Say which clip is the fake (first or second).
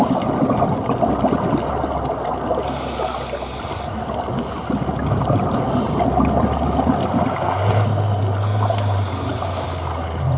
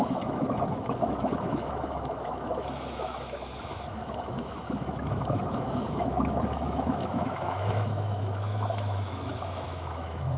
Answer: second